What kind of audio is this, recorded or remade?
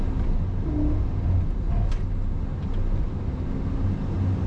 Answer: recorded